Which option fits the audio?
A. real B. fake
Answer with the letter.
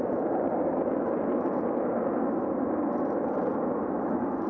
A